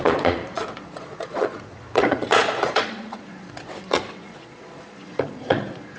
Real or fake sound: fake